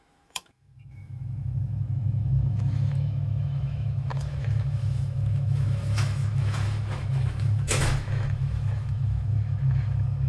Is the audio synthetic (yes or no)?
yes